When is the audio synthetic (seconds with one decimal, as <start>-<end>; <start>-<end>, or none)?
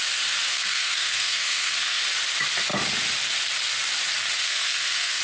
0.5-2.0; 4.4-5.2